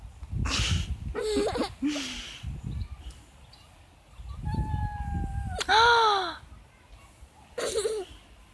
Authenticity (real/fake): real